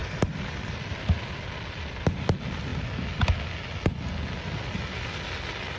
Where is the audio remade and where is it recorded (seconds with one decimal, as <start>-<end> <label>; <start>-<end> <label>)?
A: 0.0-1.0 remade; 1.0-5.8 recorded